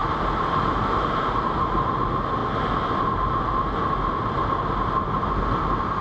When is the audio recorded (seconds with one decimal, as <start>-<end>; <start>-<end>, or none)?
0.0-6.0